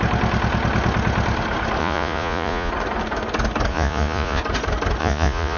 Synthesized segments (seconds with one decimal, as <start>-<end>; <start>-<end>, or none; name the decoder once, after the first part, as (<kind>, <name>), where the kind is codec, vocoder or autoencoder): 1.8-2.7 (vocoder, Vocos); 3.7-4.4; 5.0-5.6